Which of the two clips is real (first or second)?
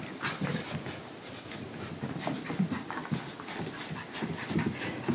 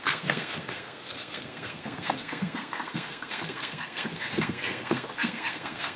first